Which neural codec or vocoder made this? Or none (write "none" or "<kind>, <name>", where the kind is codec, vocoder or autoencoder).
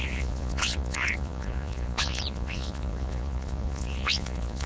vocoder, Vocos